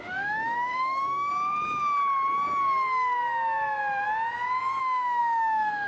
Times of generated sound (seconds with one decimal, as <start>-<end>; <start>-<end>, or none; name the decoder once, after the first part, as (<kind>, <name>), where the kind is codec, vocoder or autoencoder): 0.0-1.3 (autoencoder, DAC-VAE); 4.8-5.9